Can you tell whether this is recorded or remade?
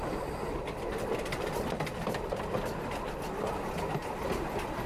recorded